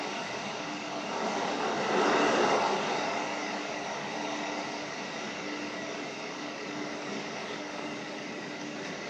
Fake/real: fake